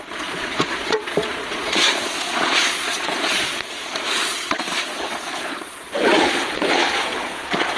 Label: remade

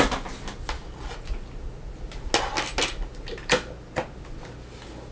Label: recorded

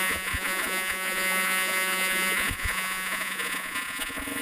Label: remade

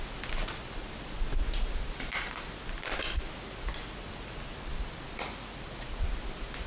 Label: recorded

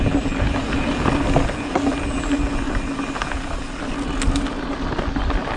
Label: recorded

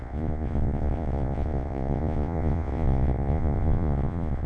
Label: remade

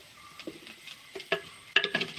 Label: recorded